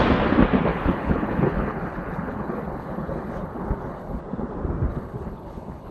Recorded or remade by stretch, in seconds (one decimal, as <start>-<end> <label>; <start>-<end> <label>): 0.0-0.7 recorded; 0.7-4.2 remade; 4.2-4.9 recorded; 4.9-5.9 remade

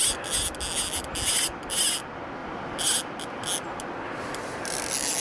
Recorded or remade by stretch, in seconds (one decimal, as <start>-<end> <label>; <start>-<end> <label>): 0.0-5.2 recorded